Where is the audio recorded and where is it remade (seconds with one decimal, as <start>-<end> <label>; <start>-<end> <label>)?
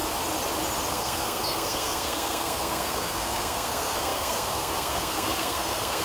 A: 0.0-0.9 recorded; 0.9-6.0 remade